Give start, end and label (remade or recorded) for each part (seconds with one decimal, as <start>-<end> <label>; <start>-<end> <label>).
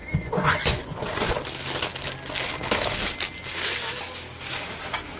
0.0-1.3 remade; 1.3-5.2 recorded